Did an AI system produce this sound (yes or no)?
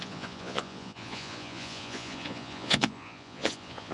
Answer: yes